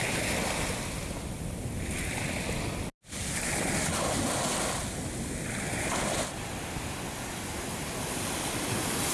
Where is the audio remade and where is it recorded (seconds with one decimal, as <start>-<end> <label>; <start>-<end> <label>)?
0.0-9.1 recorded